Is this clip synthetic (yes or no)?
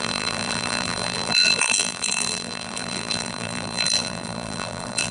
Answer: yes